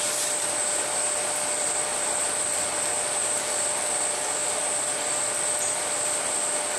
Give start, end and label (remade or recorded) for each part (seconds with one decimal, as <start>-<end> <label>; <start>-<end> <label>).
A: 0.0-6.8 recorded